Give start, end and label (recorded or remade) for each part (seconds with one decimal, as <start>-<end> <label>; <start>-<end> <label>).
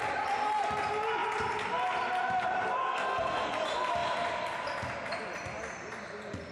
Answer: 0.0-2.8 recorded; 2.8-3.5 remade; 3.5-6.5 recorded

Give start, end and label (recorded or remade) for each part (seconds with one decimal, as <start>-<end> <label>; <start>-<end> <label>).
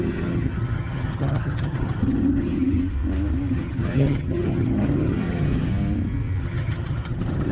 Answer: 0.0-2.8 remade; 2.8-3.5 recorded; 3.5-5.7 remade; 5.7-6.4 recorded; 6.4-7.5 remade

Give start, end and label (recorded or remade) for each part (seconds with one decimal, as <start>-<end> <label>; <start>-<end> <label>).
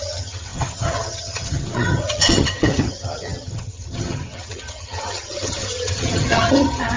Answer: 0.0-7.0 remade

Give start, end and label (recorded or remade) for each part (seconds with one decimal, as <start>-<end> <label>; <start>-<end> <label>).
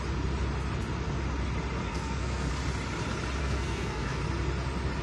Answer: 0.0-1.8 recorded; 1.8-2.5 remade; 2.5-3.4 recorded; 3.4-4.2 remade; 4.2-5.0 recorded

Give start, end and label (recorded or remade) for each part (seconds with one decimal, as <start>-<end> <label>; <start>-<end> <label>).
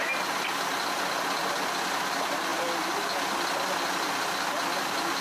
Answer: 0.0-5.2 recorded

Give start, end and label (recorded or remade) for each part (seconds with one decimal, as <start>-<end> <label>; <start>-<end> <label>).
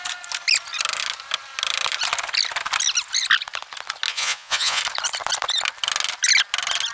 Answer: 0.0-4.1 recorded; 4.1-4.8 remade; 4.8-6.9 recorded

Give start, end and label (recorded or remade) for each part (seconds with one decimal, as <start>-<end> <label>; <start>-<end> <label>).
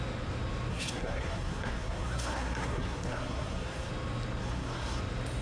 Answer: 0.0-0.7 recorded; 0.7-3.9 remade; 3.9-4.4 recorded; 4.4-5.0 remade; 5.0-5.4 recorded